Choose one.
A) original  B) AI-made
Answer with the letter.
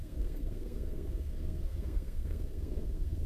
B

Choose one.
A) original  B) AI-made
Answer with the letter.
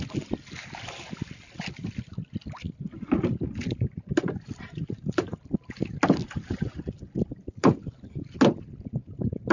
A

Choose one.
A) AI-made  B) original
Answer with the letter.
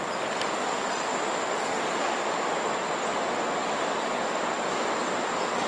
B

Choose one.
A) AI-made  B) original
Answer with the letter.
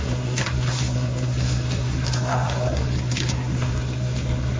A